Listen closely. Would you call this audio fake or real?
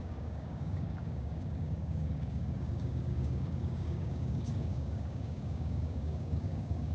fake